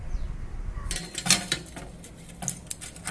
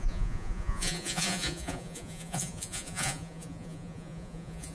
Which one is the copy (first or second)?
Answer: second